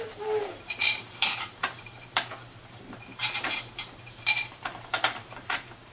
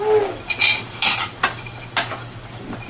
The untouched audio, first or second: second